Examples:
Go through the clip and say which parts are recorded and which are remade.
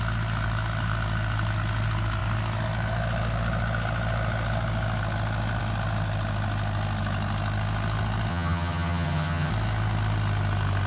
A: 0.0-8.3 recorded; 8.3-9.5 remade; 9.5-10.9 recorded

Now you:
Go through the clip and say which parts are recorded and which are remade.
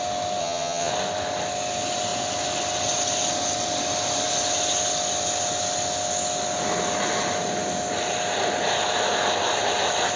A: 0.0-0.4 recorded; 0.4-0.9 remade; 0.9-10.2 recorded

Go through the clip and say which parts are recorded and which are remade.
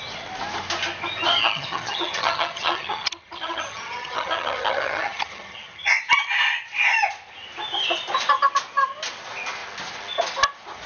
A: 0.0-1.4 recorded; 1.4-5.9 remade; 5.9-10.9 recorded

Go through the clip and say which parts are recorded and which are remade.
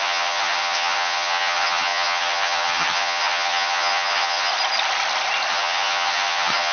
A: 0.0-4.5 remade; 4.5-5.5 recorded; 5.5-6.7 remade